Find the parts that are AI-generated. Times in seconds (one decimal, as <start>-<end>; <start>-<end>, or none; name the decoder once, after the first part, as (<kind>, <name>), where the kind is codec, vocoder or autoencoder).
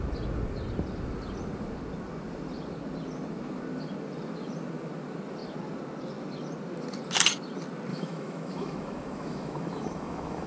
7.9-10.5 (autoencoder, DAC-VAE)